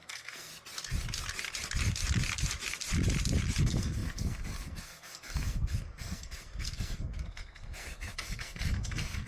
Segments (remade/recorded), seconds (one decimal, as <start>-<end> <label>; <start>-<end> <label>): 0.0-0.5 remade; 0.5-3.6 recorded; 3.6-9.3 remade